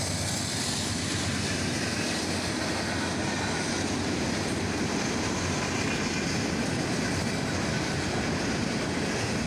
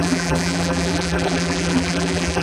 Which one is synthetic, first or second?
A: second